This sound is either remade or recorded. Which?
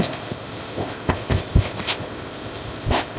remade